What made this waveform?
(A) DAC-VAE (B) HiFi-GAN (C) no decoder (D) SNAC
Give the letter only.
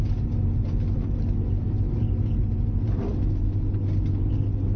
C